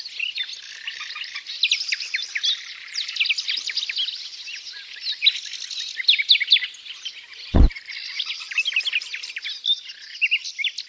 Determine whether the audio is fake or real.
real